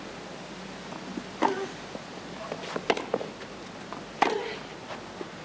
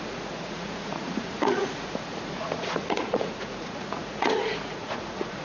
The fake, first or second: second